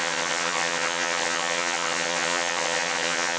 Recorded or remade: remade